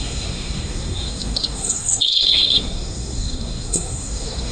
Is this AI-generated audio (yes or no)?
yes